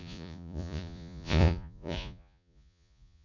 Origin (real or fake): fake